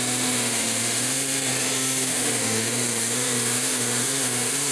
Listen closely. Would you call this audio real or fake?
fake